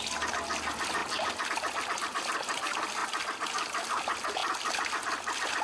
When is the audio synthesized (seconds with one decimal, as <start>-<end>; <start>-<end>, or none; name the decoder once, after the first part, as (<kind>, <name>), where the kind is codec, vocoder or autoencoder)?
none